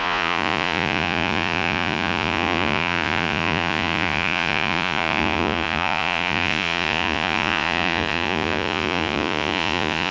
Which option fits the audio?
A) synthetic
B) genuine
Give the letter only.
A